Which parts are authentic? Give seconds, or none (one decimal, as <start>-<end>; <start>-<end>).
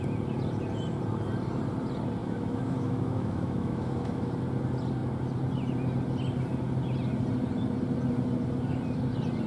0.0-2.2; 4.3-9.5